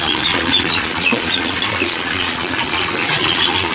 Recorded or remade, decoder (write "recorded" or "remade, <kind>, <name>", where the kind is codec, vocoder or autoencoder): remade, vocoder, Vocos